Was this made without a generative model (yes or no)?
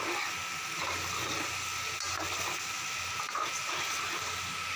yes